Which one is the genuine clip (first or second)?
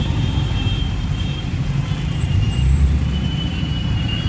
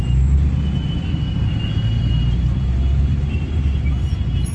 second